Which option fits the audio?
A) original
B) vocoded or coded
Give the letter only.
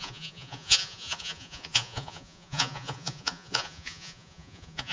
B